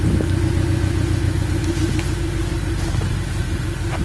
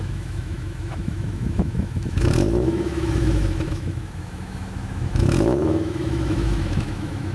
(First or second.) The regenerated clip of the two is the second